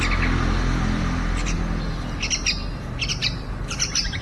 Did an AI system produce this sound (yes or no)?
no